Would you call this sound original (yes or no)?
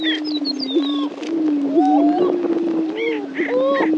yes